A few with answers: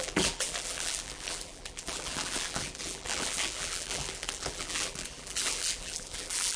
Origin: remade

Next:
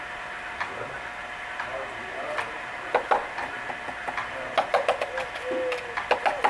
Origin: recorded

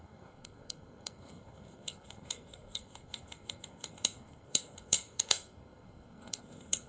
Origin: remade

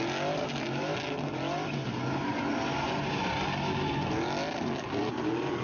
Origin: recorded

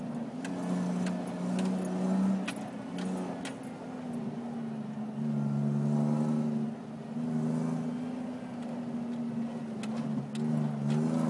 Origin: recorded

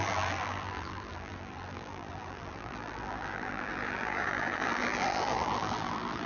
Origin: remade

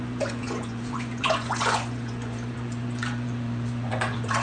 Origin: remade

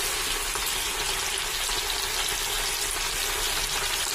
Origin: recorded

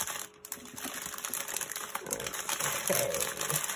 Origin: recorded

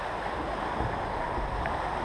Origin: recorded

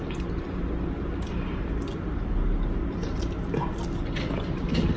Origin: recorded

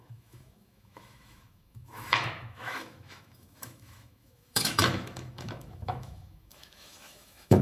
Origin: remade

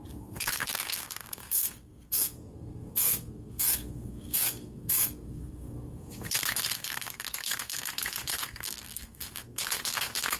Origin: remade